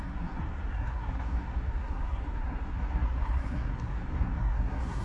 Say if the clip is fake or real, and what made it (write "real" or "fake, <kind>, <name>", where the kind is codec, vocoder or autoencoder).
fake, codec, SNAC